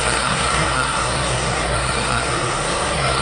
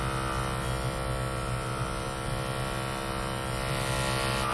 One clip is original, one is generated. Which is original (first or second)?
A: second